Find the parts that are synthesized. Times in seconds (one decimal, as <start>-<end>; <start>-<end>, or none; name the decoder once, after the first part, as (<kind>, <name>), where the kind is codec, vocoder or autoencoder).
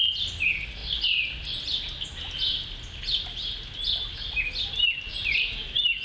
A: none